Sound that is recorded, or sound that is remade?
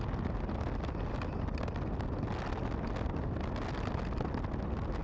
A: recorded